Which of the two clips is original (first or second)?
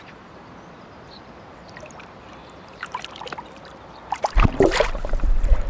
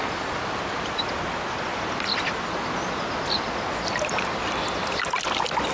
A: second